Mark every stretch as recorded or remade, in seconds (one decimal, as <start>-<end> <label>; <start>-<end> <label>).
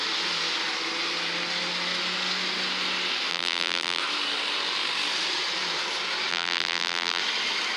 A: 0.0-3.3 recorded; 3.3-4.0 remade; 4.0-6.3 recorded; 6.3-7.2 remade; 7.2-7.8 recorded